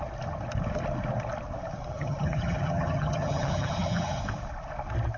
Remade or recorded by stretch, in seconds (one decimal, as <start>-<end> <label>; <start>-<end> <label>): 0.0-1.9 recorded; 1.9-4.2 remade; 4.2-5.2 recorded